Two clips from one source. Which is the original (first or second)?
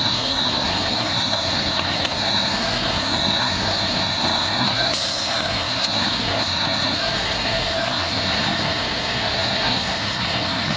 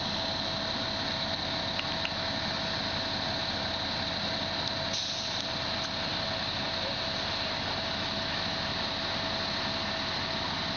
second